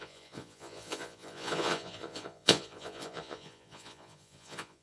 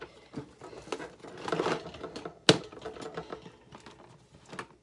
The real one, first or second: second